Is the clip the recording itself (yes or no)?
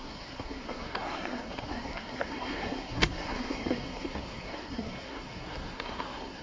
no